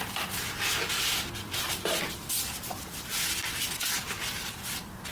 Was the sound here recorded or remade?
recorded